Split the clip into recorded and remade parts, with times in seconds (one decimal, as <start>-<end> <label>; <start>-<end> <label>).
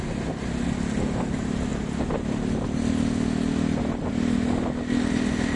0.0-5.6 recorded